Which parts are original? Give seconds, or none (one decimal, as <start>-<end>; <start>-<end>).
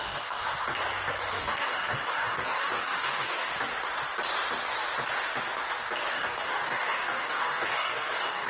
0.4-1.3; 3.5-6.1